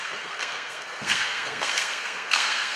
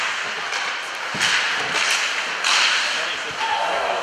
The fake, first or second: first